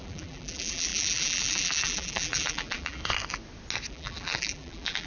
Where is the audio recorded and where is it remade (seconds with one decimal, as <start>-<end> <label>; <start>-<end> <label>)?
0.0-3.0 remade; 3.0-3.9 recorded; 3.9-5.1 remade